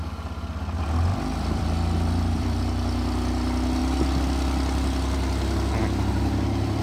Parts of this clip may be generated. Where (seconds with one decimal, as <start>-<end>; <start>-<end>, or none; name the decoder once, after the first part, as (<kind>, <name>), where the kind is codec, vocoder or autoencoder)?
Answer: 1.1-2.6 (vocoder, BigVGAN v2)